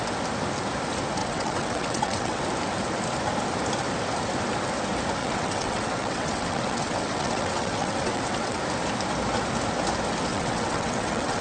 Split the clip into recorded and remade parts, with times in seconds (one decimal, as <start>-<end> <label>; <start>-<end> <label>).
0.0-1.2 recorded; 1.2-2.4 remade; 2.4-5.2 recorded; 5.2-8.6 remade; 8.6-10.3 recorded; 10.3-11.4 remade